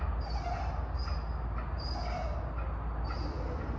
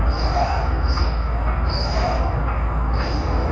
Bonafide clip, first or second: first